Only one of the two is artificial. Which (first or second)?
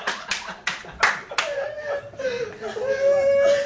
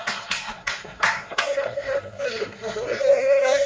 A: second